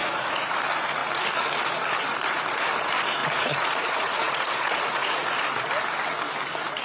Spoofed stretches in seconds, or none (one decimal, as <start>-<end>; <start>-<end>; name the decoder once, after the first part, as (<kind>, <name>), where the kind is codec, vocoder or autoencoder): 0.0-0.5 (vocoder, Vocos); 3.2-5.7